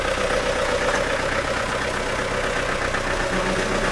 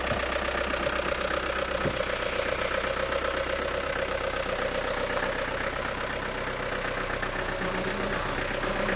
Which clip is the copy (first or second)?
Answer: first